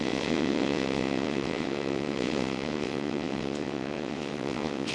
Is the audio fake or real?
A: fake